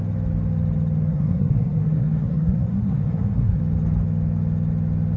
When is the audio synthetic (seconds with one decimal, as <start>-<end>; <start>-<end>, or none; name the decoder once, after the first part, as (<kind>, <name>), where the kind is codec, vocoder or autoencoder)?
1.1-3.6 (codec, SNAC)